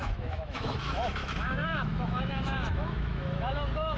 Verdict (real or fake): fake